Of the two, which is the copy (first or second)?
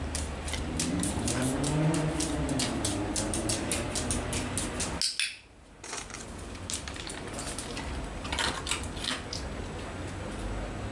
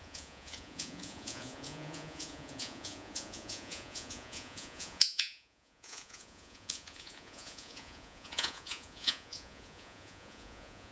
second